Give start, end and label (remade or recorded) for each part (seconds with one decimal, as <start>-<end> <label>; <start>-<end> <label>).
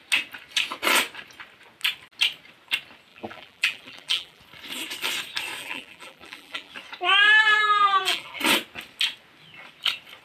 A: 0.0-3.1 recorded; 3.1-4.4 remade; 4.4-5.6 recorded; 5.6-6.7 remade; 6.7-7.6 recorded; 7.6-8.4 remade; 8.4-10.2 recorded